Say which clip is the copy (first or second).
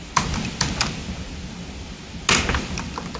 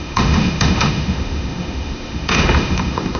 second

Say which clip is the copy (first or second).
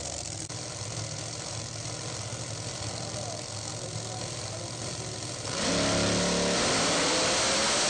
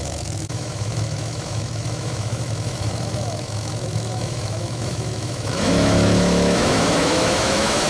second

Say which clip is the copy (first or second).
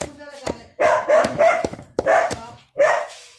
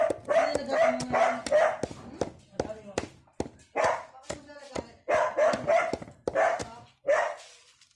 first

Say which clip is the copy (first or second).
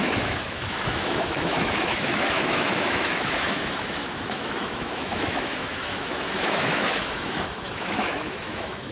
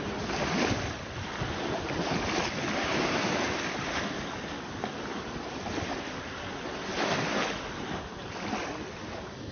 first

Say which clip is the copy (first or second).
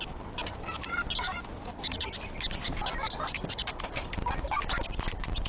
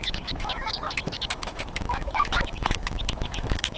second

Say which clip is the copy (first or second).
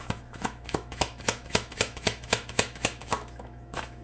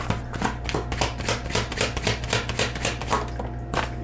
first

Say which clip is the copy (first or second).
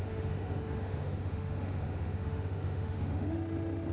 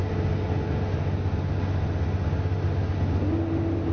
first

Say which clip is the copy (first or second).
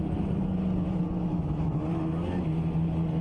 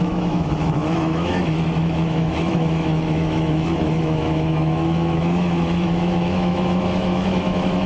second